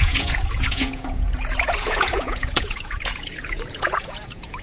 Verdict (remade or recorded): remade